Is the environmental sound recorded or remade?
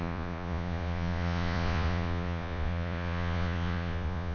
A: remade